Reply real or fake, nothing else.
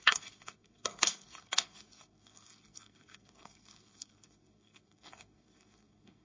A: fake